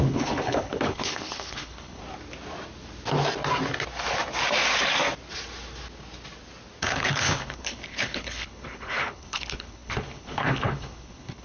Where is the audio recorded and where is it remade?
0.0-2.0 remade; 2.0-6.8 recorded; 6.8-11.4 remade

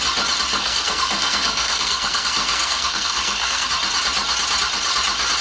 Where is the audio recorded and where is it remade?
0.0-0.5 recorded; 0.5-3.7 remade; 3.7-5.4 recorded

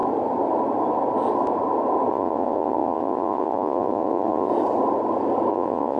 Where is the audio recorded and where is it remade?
0.0-2.1 recorded; 2.1-4.5 remade; 4.5-5.5 recorded; 5.5-6.0 remade

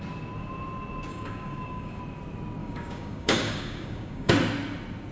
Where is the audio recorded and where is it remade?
0.0-1.1 recorded; 1.1-2.0 remade; 2.0-2.6 recorded; 2.6-4.3 remade; 4.3-5.1 recorded

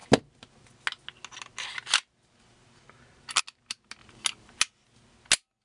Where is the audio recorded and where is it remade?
0.0-5.6 recorded